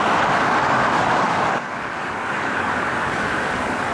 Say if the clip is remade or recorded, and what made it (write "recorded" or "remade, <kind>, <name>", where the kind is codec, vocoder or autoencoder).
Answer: remade, codec, DAC